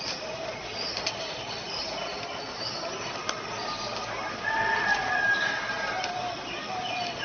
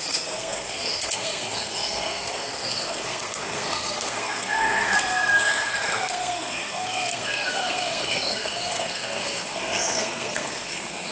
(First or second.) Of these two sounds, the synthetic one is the second